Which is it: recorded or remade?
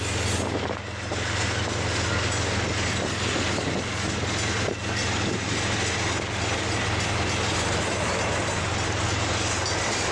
recorded